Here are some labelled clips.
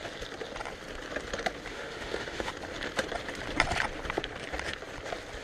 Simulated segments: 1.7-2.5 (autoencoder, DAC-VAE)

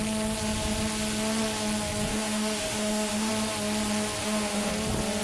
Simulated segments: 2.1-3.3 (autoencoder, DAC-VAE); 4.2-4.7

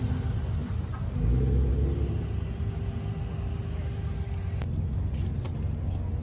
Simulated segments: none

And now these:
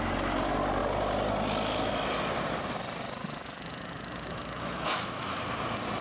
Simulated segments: 3.2-5.4 (autoencoder, DAC-VAE)

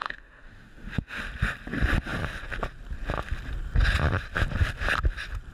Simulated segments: 0.0-1.2 (autoencoder, DAC-VAE)

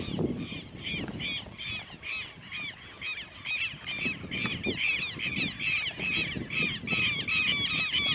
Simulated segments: none

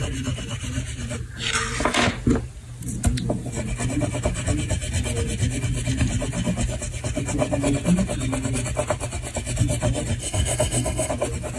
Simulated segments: 10.2-11.1 (autoencoder, DAC-VAE)

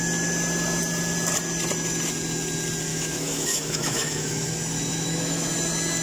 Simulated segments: 2.9-4.5 (autoencoder, DAC-VAE); 4.9-5.5